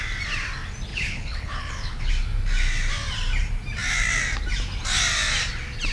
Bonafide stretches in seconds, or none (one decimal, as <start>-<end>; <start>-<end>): 0.0-0.9; 2.1-5.9